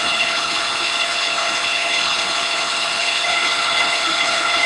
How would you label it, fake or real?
fake